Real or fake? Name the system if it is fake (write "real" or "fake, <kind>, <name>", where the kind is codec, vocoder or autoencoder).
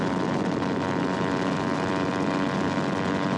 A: real